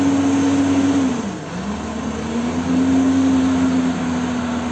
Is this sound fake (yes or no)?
no